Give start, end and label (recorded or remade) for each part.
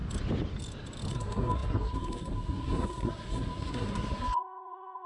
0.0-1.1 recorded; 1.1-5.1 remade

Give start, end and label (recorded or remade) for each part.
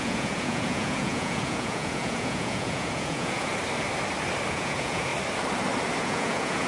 0.0-3.5 remade; 3.5-4.5 recorded; 4.5-5.1 remade; 5.1-6.0 recorded; 6.0-6.7 remade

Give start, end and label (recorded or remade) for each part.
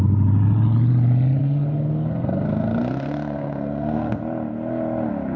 0.0-1.4 recorded; 1.4-4.2 remade; 4.2-5.4 recorded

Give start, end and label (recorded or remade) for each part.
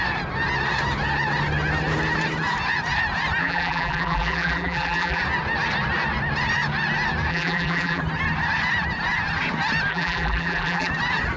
0.0-3.4 recorded; 3.4-5.2 remade; 5.2-7.3 recorded; 7.3-8.0 remade; 8.0-9.9 recorded; 9.9-10.9 remade; 10.9-11.4 recorded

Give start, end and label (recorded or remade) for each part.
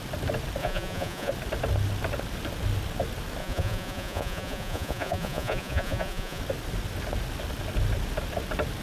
0.0-0.6 recorded; 0.6-1.3 remade; 1.3-3.4 recorded; 3.4-6.4 remade; 6.4-8.8 recorded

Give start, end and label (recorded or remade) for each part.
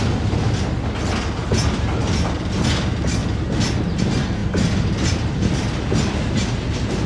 0.0-1.4 recorded; 1.4-2.5 remade; 2.5-4.4 recorded; 4.4-5.5 remade; 5.5-7.1 recorded